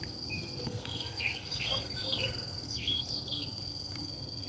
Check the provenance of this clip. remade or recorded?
remade